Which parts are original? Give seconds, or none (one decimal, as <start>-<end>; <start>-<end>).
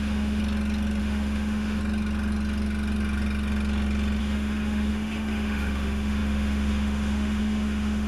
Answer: 0.4-1.0; 1.8-4.2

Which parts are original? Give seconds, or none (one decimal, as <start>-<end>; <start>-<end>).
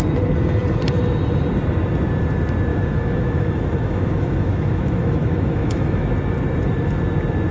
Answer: 0.0-2.7; 6.1-7.5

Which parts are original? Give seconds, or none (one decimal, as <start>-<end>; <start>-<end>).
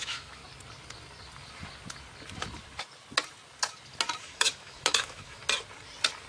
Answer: 0.4-4.2; 5.4-6.3